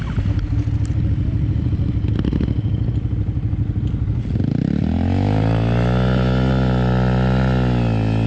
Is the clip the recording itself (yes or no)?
yes